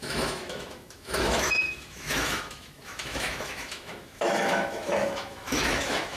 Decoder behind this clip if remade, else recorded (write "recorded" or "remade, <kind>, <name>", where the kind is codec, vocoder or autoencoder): remade, autoencoder, DAC-VAE